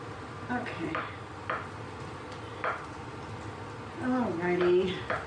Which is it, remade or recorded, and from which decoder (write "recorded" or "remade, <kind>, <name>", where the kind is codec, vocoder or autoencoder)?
recorded